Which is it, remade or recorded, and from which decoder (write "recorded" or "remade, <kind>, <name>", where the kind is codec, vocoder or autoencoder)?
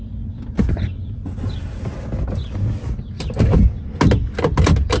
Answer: recorded